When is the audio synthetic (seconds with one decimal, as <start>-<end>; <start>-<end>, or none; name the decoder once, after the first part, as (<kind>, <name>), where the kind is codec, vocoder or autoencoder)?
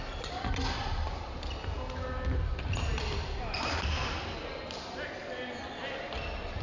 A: none